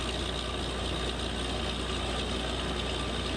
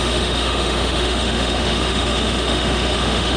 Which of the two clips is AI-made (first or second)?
second